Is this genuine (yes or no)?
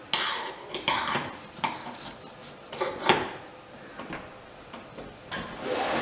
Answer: yes